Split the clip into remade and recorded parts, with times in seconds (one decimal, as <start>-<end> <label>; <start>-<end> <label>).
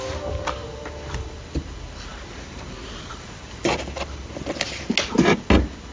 0.0-5.9 recorded